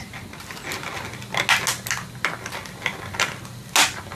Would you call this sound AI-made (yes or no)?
no